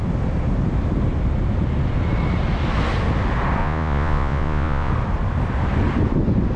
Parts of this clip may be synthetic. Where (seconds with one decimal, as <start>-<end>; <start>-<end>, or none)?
3.6-4.9

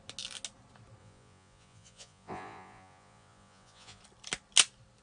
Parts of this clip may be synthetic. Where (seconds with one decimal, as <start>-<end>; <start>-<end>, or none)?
1.0-4.0